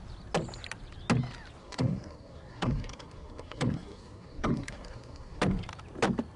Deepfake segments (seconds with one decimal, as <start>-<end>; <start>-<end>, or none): 1.6-5.4